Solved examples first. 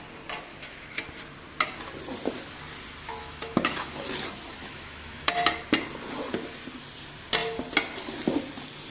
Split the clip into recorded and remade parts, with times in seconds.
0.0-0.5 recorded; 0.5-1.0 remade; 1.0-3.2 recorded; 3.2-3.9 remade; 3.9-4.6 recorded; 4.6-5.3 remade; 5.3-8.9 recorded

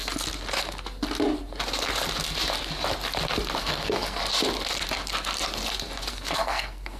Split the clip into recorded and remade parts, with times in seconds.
0.0-3.6 recorded; 3.6-4.2 remade; 4.2-6.1 recorded; 6.1-7.0 remade